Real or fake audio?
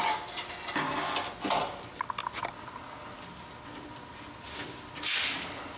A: real